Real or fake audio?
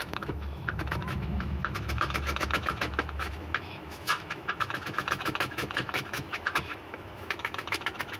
fake